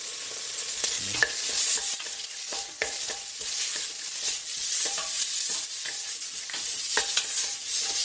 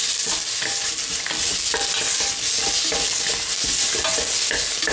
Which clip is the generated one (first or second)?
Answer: first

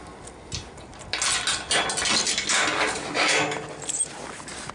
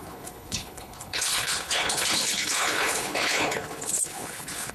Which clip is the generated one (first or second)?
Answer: second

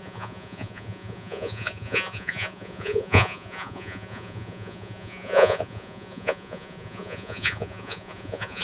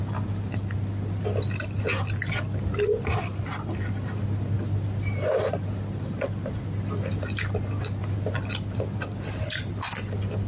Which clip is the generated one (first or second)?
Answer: first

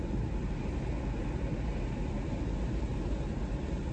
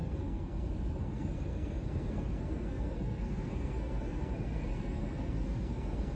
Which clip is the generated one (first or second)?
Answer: second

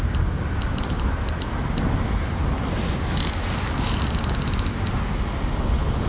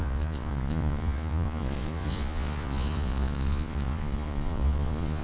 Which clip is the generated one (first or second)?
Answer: second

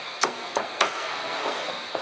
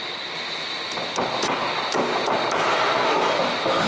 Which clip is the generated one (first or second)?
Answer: first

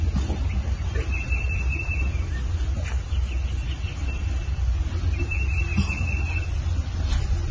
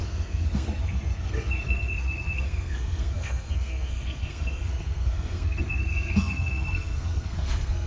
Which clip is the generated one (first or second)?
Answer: second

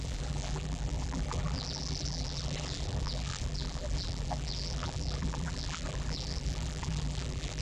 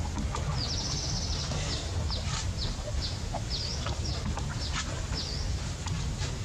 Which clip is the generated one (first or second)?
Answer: first